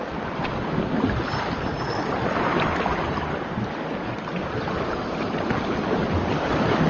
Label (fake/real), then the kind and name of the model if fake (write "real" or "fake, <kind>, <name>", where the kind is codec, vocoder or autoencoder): real